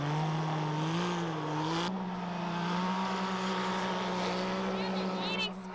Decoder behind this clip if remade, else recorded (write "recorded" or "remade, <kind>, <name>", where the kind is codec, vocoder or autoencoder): recorded